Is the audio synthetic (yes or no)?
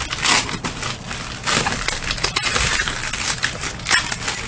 no